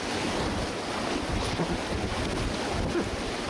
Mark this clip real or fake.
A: real